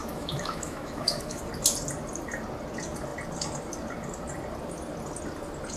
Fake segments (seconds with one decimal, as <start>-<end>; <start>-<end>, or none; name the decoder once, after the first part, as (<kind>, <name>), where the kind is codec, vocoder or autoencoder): 0.0-1.4 (autoencoder, DAC-VAE)